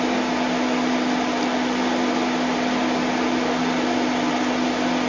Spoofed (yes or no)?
no